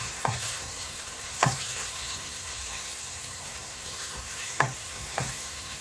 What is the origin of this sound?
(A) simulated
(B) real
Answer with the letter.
A